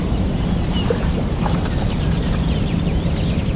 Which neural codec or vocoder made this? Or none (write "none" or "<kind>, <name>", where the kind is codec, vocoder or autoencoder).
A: none